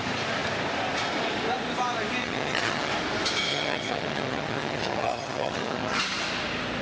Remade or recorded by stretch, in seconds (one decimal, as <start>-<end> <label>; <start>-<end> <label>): 0.0-2.2 recorded; 2.2-2.9 remade; 2.9-3.5 recorded; 3.5-6.0 remade; 6.0-6.8 recorded